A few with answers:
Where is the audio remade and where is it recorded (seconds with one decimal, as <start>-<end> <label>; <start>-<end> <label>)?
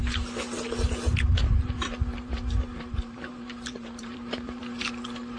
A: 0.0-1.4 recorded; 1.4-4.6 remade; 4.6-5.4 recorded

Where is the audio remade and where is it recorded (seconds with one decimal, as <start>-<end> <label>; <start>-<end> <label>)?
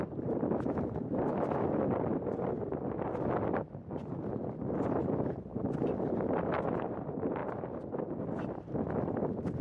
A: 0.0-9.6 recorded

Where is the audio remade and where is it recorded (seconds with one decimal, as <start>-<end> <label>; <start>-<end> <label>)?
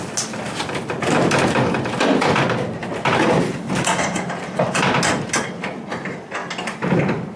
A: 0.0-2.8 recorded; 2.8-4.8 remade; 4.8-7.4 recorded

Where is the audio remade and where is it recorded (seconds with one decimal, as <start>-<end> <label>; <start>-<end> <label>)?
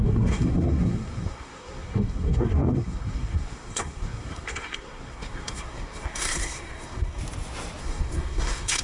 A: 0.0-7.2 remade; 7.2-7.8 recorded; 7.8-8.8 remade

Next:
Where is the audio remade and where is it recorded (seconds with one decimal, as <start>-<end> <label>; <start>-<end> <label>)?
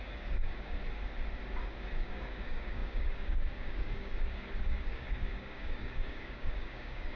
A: 0.0-0.8 remade; 0.8-1.6 recorded; 1.6-7.2 remade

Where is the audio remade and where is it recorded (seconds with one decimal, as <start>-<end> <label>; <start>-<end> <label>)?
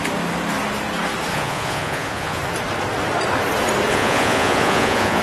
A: 0.0-1.3 recorded; 1.3-2.4 remade; 2.4-3.9 recorded; 3.9-5.2 remade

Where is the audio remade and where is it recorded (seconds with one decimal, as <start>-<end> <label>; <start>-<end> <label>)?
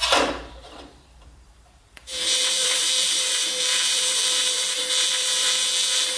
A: 0.0-6.2 remade